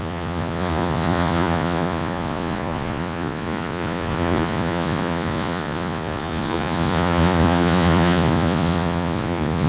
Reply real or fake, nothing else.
fake